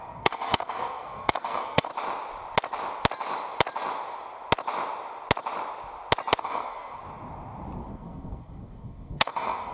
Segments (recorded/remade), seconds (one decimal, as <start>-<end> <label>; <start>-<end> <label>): 0.0-1.9 remade; 1.9-6.4 recorded; 6.4-7.0 remade; 7.0-7.9 recorded; 7.9-9.7 remade